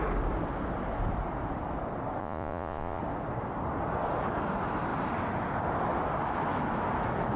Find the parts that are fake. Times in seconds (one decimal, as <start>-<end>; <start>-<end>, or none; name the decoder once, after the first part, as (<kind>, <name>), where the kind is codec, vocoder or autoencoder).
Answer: 2.2-3.0 (vocoder, Vocos)